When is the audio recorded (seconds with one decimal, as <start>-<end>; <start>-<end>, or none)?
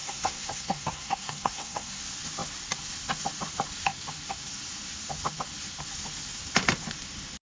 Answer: 2.0-7.4